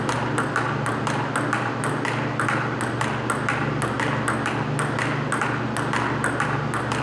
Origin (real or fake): real